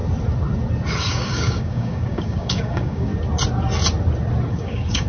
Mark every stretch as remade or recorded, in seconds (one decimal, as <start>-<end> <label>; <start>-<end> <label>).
0.0-1.1 recorded; 1.1-3.1 remade; 3.1-4.5 recorded; 4.5-5.1 remade